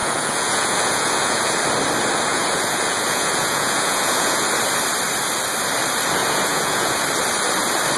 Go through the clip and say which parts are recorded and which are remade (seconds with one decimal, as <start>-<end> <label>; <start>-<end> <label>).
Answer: 0.0-1.6 remade; 1.6-2.3 recorded; 2.3-4.5 remade; 4.5-6.2 recorded; 6.2-7.0 remade; 7.0-8.0 recorded